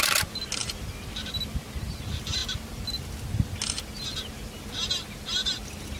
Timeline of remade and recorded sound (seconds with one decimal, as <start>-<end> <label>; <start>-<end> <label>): 0.0-6.0 recorded